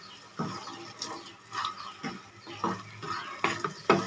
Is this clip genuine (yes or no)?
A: yes